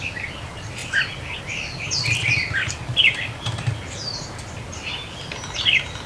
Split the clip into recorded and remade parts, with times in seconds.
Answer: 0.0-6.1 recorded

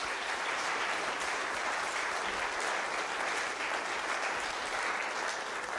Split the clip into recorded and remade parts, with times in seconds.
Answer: 0.0-2.2 remade; 2.2-5.8 recorded

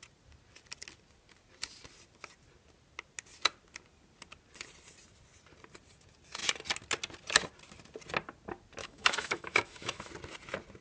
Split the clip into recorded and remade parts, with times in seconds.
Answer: 0.0-8.8 recorded; 8.8-10.1 remade; 10.1-10.8 recorded

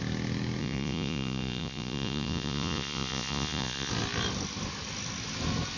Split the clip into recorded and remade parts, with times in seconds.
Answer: 0.0-0.6 recorded; 0.6-3.9 remade; 3.9-5.8 recorded

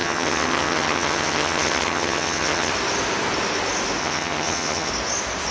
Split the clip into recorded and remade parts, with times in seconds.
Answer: 0.0-2.7 remade; 2.7-4.0 recorded; 4.0-4.9 remade; 4.9-5.5 recorded

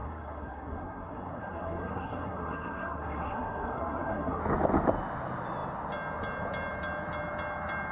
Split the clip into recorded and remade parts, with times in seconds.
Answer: 0.0-4.4 remade; 4.4-7.9 recorded

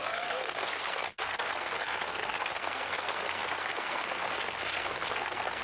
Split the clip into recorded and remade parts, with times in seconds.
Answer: 0.0-5.6 remade